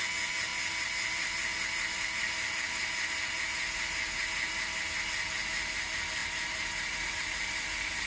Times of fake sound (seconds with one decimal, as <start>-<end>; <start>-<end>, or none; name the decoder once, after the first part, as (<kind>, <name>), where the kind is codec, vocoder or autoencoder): none